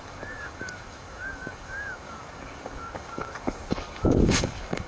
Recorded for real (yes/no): no